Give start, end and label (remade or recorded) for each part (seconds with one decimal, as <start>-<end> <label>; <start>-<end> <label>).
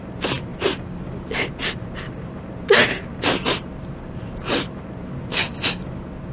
0.0-0.5 recorded; 0.5-1.3 remade; 1.3-6.3 recorded